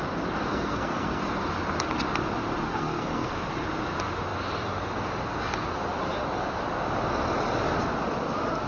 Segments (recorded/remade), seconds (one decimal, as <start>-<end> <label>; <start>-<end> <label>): 0.0-0.5 recorded; 0.5-1.2 remade; 1.2-2.7 recorded; 2.7-3.3 remade; 3.3-8.7 recorded